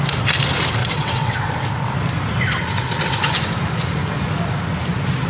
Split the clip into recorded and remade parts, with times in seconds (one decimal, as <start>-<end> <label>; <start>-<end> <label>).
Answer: 0.0-0.8 recorded; 0.8-1.5 remade; 1.5-5.3 recorded